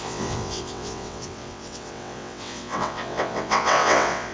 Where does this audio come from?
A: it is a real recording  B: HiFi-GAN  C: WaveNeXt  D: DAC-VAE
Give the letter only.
C